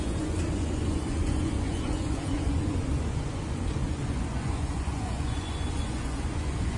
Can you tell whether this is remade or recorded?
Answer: remade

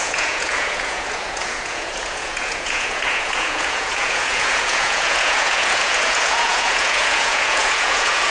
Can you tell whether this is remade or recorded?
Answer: remade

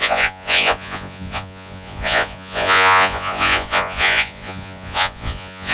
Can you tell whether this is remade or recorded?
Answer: remade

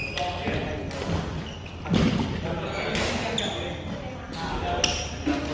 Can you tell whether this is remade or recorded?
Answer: recorded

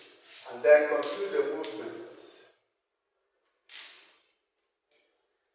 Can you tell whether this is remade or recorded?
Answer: recorded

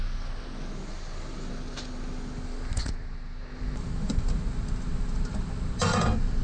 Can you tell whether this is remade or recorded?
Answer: recorded